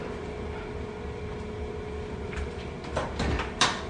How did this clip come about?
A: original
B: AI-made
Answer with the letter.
A